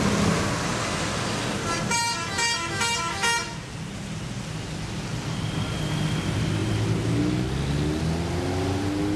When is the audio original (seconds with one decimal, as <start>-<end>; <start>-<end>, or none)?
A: 0.0-9.2